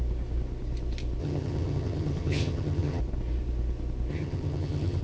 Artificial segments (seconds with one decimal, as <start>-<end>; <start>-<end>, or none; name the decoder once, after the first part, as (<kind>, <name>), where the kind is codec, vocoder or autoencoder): 1.2-3.0 (vocoder, HiFi-GAN); 4.1-5.0